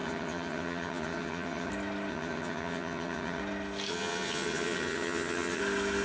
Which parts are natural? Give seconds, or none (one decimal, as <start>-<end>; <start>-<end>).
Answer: 1.7-2.1; 3.4-3.9; 5.6-6.0